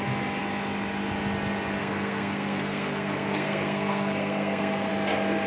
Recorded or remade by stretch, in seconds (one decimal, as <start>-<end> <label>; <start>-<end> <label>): 0.0-1.8 recorded; 1.8-4.9 remade; 4.9-5.5 recorded